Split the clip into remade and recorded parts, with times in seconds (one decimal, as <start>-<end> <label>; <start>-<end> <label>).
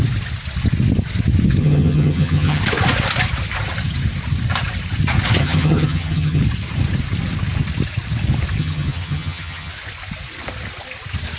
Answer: 0.0-1.6 recorded; 1.6-2.6 remade; 2.6-5.4 recorded; 5.4-6.4 remade; 6.4-8.6 recorded; 8.6-9.7 remade; 9.7-11.4 recorded